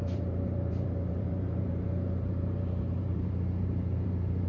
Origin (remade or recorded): remade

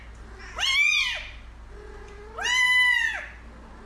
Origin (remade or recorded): recorded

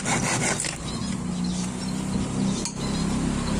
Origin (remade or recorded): recorded